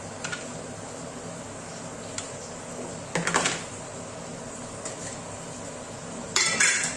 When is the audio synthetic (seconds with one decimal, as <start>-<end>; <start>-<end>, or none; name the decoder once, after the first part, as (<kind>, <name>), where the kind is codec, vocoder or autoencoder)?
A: 6.3-7.0 (vocoder, BigVGAN v2)

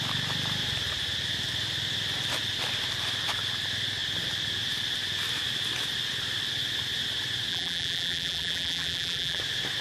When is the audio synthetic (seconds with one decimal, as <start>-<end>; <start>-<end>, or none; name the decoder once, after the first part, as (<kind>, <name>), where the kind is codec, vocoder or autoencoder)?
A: 7.5-9.4 (vocoder, BigVGAN v2)

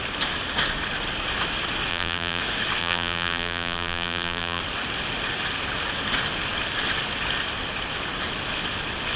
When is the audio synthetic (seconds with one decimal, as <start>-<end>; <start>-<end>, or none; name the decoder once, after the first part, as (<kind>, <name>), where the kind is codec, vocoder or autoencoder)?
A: 1.9-2.4 (vocoder, BigVGAN v2); 2.8-4.6

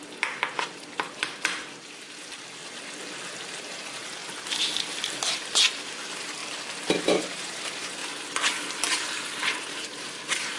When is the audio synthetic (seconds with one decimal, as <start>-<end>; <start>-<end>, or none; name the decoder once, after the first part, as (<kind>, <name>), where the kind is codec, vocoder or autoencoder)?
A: 0.0-2.6 (vocoder, BigVGAN v2); 3.3-4.2; 5.1-6.4; 7.0-8.0; 8.9-10.6

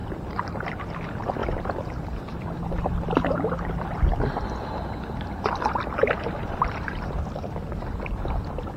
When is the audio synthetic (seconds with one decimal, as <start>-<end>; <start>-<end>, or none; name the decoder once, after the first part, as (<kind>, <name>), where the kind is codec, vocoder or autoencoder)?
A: 0.0-0.8 (vocoder, BigVGAN v2); 6.0-7.7

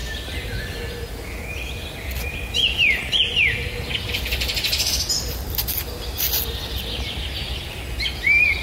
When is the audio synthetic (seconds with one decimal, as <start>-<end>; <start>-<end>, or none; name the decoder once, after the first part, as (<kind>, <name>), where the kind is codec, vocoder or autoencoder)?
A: none

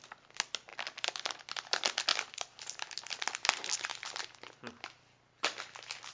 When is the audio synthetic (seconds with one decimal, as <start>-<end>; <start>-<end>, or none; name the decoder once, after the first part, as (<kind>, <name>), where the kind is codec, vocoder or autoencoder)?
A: 2.1-2.6 (vocoder, BigVGAN v2)

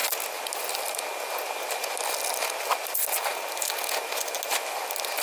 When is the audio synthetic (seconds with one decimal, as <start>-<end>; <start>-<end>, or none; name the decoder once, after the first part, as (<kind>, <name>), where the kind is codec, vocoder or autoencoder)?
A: none